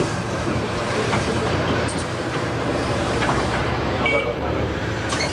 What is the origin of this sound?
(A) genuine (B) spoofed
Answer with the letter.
B